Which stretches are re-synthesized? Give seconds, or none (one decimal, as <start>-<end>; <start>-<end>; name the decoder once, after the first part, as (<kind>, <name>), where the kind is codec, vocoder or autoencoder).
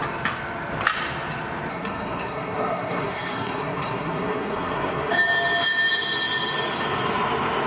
1.7-5.1 (codec, SNAC)